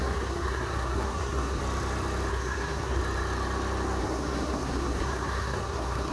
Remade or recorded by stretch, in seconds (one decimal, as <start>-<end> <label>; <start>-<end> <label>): 0.0-1.6 remade; 1.6-2.3 recorded; 2.3-3.0 remade; 3.0-4.0 recorded; 4.0-6.1 remade